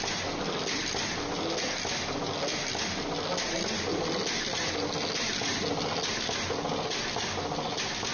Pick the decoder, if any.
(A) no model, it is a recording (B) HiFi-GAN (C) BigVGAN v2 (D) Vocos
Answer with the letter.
A